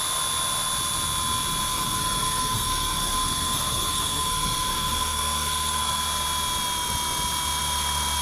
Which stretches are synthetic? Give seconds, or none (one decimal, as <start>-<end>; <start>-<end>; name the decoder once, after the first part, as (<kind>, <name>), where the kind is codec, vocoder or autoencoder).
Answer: 1.7-6.0 (codec, SNAC)